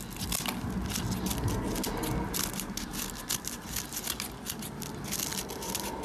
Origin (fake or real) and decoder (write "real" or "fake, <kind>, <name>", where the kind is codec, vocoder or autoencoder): real